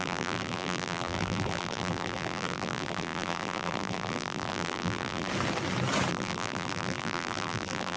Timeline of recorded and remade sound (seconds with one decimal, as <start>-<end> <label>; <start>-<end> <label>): 0.0-5.3 remade; 5.3-6.1 recorded; 6.1-8.0 remade